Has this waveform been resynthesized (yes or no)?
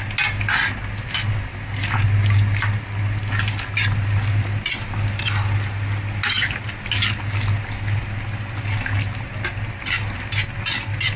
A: no